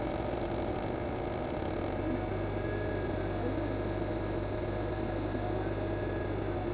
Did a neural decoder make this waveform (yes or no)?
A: no